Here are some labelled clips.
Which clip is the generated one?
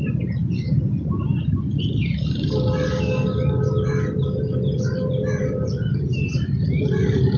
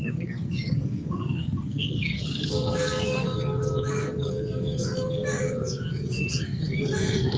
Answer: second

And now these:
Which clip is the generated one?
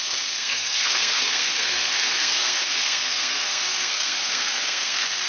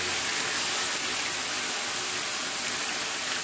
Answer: first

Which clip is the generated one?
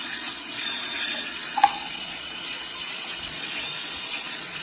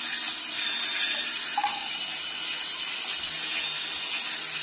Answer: first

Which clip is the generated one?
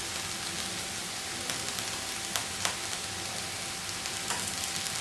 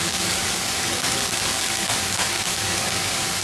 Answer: second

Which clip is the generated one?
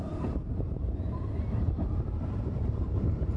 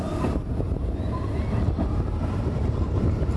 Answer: first